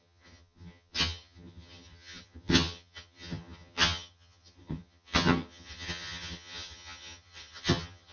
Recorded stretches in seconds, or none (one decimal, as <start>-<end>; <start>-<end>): none

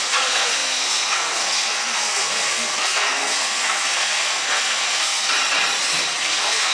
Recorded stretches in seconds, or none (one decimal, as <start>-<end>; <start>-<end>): 5.3-6.2

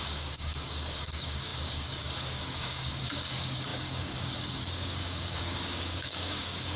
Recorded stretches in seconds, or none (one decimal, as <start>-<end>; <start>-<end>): none

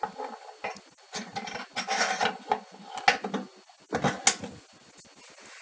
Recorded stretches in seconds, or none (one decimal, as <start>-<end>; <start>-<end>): 0.0-5.6

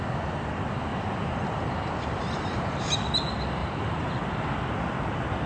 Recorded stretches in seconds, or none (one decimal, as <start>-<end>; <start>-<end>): 0.0-0.9; 2.9-3.6; 4.2-5.5